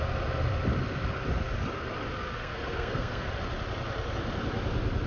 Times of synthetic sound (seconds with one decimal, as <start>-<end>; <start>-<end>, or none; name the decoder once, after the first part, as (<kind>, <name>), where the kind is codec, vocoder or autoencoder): 2.4-3.2 (codec, SNAC)